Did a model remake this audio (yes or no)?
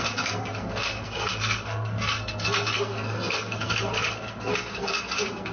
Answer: yes